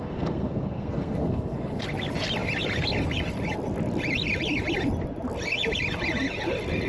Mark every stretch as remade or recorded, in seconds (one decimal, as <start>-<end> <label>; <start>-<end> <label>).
0.0-1.8 remade; 1.8-6.9 recorded